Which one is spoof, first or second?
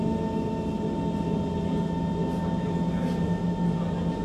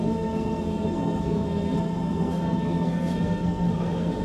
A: second